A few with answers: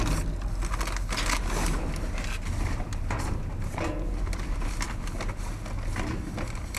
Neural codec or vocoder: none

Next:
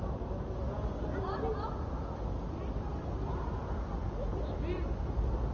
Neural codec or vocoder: none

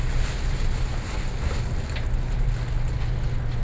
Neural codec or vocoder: none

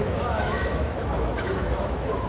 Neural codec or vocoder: autoencoder, DAC-VAE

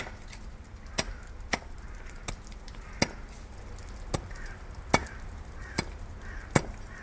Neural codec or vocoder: none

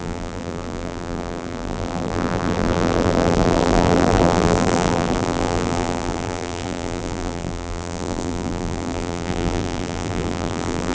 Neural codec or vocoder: vocoder, BigVGAN v2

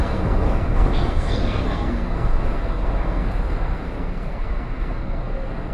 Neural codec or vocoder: codec, SNAC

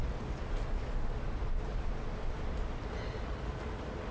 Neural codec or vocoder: none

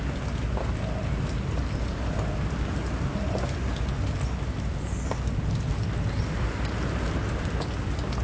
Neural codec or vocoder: none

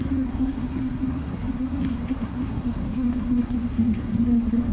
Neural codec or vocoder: codec, SNAC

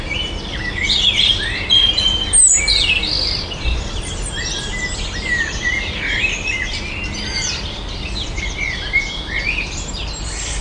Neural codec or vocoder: none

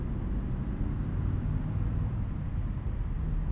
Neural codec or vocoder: none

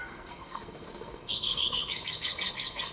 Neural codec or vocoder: codec, SNAC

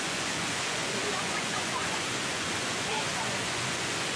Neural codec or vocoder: vocoder, Vocos